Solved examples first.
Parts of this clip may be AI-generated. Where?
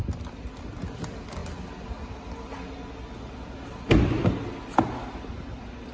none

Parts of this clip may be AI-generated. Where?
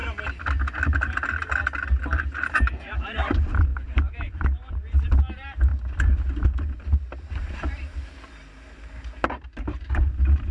2.2-5.7 (vocoder, BigVGAN v2); 7.3-10.5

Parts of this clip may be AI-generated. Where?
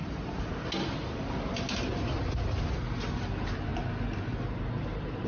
0.0-0.5 (vocoder, BigVGAN v2)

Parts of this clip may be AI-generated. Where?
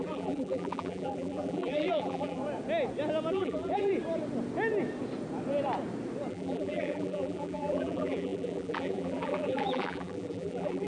0.0-2.4 (vocoder, BigVGAN v2); 3.3-3.9; 6.3-10.9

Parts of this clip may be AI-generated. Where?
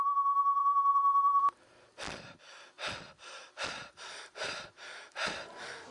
0.0-1.9 (vocoder, BigVGAN v2); 3.7-5.9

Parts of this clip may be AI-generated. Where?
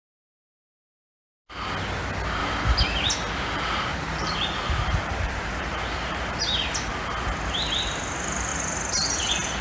3.9-6.9 (vocoder, BigVGAN v2)